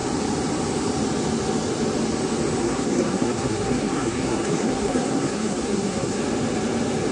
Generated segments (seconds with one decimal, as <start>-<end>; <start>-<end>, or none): 2.6-6.2